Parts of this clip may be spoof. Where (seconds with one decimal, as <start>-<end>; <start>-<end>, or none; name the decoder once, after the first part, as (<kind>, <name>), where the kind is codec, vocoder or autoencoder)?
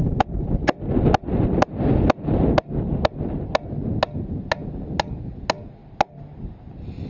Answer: 5.8-6.3 (vocoder, BigVGAN v2)